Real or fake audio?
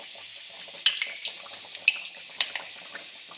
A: real